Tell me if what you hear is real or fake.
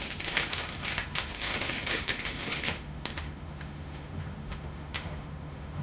fake